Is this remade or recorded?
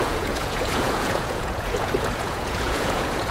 remade